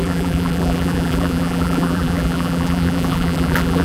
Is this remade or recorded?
remade